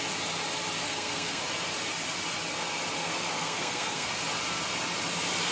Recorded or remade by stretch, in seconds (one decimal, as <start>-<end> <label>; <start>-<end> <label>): 0.0-0.8 recorded; 0.8-1.4 remade; 1.4-3.0 recorded; 3.0-4.1 remade; 4.1-5.5 recorded